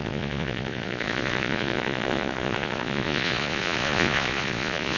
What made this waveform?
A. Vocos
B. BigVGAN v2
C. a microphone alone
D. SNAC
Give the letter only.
A